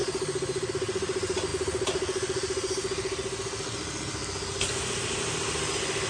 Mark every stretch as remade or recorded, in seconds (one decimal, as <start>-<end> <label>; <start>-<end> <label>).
0.0-6.1 recorded